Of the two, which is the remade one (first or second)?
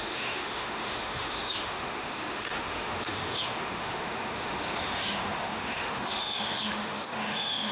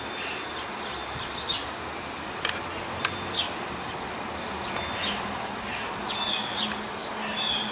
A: first